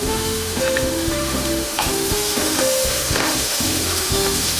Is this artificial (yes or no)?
yes